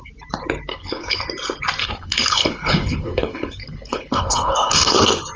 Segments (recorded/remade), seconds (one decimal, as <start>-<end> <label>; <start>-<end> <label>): 0.0-0.7 recorded; 0.7-1.2 remade; 1.2-1.8 recorded; 1.8-5.0 remade; 5.0-5.4 recorded